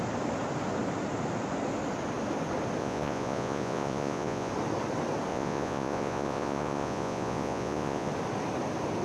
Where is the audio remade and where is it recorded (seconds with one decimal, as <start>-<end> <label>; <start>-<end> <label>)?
0.0-2.8 recorded; 2.8-4.5 remade; 4.5-5.3 recorded; 5.3-8.1 remade; 8.1-9.0 recorded